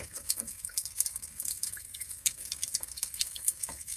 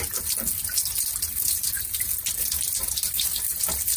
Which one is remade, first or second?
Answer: first